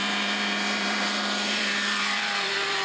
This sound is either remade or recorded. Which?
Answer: remade